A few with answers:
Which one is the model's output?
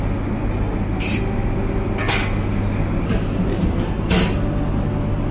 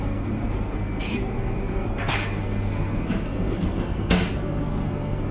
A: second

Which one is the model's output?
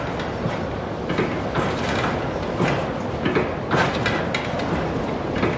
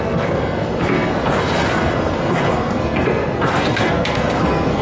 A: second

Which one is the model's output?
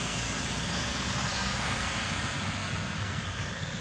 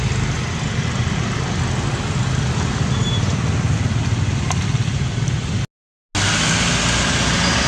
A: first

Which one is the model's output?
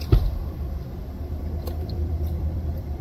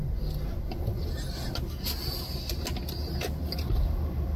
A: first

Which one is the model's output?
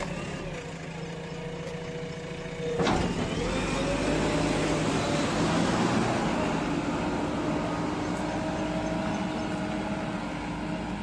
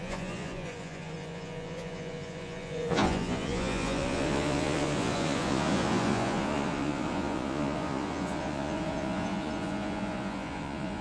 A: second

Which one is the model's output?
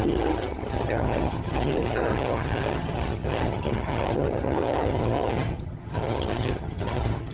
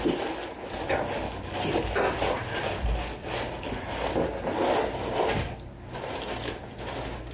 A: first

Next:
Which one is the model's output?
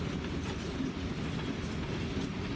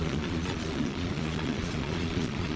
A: second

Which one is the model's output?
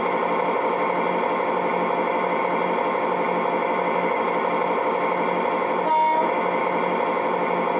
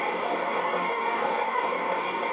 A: second